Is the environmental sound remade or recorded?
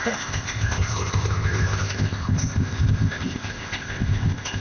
remade